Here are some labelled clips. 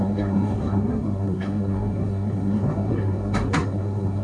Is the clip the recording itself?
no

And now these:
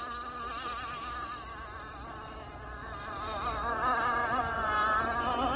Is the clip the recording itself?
yes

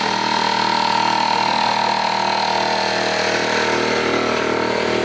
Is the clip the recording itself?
yes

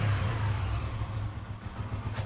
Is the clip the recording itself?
yes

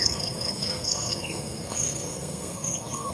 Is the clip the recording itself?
no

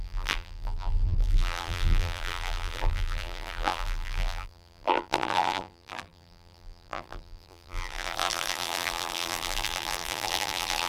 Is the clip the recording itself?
no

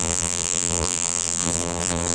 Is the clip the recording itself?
no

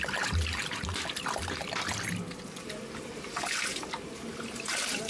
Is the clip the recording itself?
yes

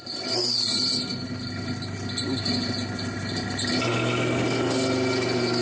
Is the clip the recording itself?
yes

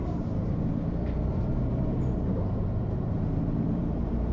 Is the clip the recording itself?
no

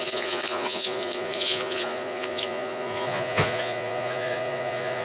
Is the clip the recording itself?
no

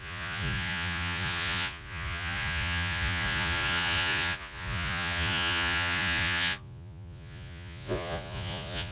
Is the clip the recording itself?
no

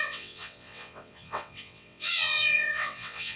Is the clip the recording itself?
no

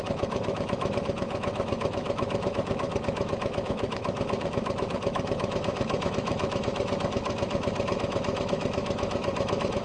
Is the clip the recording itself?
no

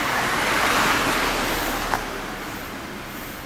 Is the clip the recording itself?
yes